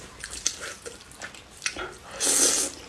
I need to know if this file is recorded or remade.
recorded